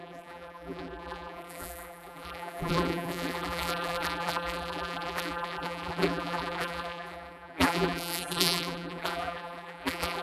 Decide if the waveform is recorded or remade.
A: remade